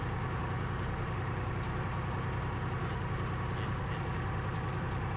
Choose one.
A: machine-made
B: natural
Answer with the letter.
B